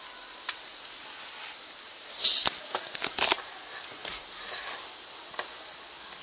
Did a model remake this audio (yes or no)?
no